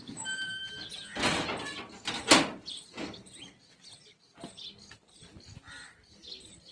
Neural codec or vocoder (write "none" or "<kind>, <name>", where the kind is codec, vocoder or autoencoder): none